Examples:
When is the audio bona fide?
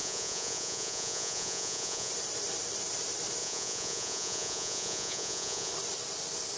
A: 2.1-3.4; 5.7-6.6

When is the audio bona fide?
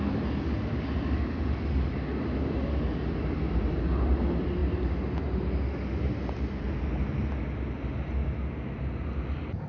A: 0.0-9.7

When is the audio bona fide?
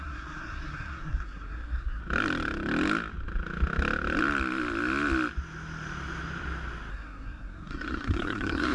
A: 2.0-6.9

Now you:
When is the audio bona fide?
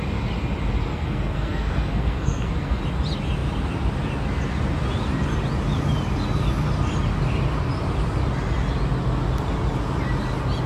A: 0.0-0.9; 2.8-10.7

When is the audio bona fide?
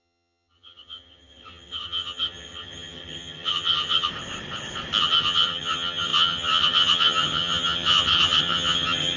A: 4.1-5.0